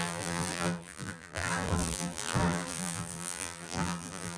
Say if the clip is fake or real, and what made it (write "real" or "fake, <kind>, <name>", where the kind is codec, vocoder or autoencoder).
fake, vocoder, BigVGAN v2